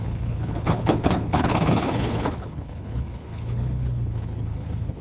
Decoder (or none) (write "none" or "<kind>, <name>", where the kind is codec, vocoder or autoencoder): codec, HILCodec